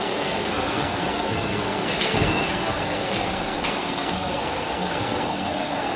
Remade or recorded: remade